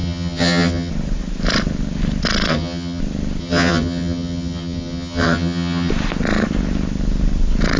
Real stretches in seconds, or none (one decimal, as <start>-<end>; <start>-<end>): 0.9-2.5; 3.0-3.4; 5.9-7.8